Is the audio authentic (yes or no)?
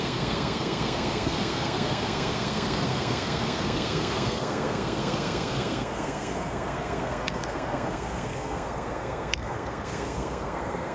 no